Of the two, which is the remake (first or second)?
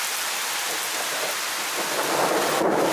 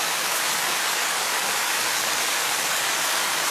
second